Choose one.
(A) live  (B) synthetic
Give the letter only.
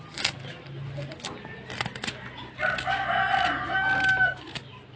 A